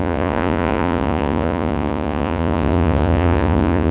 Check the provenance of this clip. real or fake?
fake